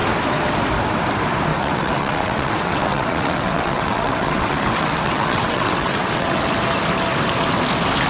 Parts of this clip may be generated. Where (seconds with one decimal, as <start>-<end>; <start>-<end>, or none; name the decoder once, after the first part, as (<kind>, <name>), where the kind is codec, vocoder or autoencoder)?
1.5-6.4 (vocoder, WaveNeXt)

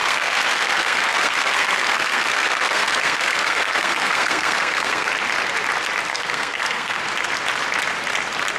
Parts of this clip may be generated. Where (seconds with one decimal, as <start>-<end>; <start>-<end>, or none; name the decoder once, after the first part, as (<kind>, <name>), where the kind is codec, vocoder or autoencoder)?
0.0-5.1 (codec, SNAC); 6.1-7.0

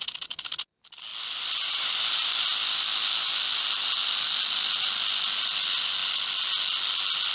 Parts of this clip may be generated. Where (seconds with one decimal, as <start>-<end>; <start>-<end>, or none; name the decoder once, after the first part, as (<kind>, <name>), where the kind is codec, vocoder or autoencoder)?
none